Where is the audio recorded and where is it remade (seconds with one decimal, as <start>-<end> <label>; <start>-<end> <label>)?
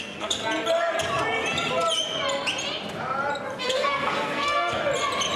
0.0-0.4 remade; 0.4-3.6 recorded; 3.6-4.8 remade; 4.8-5.4 recorded